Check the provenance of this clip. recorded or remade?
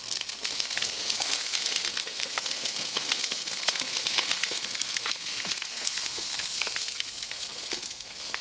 remade